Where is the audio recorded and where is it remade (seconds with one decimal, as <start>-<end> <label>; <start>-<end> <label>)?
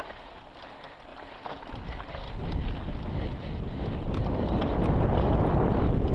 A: 0.0-6.1 recorded